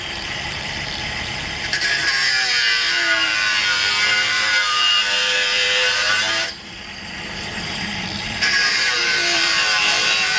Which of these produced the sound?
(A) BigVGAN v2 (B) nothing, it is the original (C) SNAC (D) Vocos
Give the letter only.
A